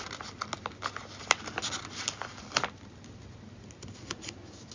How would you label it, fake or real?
real